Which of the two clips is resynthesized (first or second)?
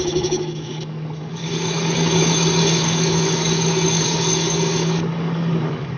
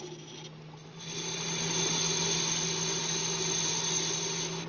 first